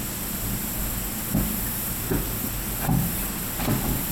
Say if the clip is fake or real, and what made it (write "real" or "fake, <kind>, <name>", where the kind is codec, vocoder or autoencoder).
real